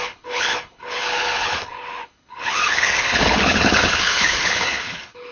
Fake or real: fake